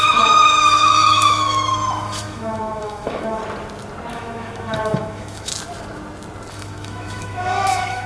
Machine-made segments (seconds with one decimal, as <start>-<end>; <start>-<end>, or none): 0.0-3.4; 4.1-5.5; 6.5-8.1